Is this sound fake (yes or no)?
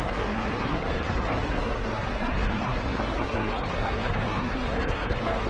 yes